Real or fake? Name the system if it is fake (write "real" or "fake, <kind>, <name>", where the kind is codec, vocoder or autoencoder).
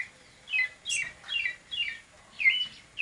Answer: real